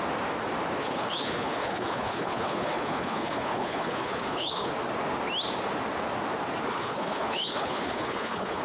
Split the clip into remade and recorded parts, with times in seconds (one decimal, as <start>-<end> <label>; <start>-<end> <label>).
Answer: 0.0-0.8 recorded; 0.8-4.7 remade; 4.7-6.7 recorded; 6.7-8.6 remade

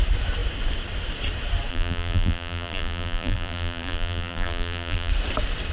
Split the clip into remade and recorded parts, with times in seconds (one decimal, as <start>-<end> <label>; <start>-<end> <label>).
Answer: 0.0-1.7 recorded; 1.7-5.1 remade; 5.1-5.7 recorded